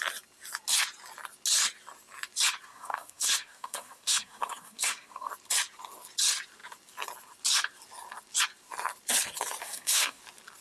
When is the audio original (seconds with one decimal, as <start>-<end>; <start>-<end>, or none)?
0.0-2.7; 5.3-9.6; 10.2-10.6